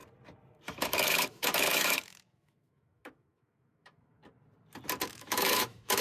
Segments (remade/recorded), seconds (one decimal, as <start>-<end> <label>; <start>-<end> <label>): 0.0-0.8 recorded; 0.8-4.2 remade; 4.2-5.1 recorded; 5.1-6.0 remade